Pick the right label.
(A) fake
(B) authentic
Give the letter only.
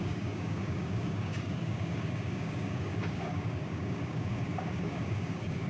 A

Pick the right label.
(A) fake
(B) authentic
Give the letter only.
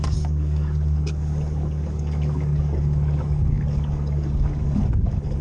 A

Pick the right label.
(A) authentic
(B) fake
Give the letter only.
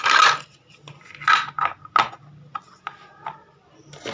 A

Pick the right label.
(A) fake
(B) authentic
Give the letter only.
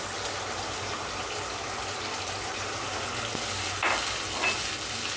B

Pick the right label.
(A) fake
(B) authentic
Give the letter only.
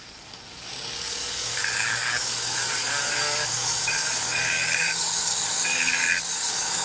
A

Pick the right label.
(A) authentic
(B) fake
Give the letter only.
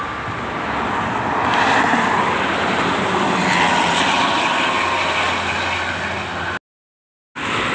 A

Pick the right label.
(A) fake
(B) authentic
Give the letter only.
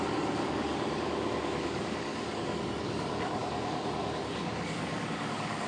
A